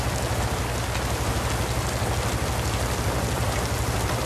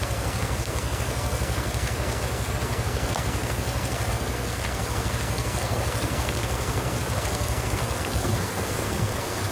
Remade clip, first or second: second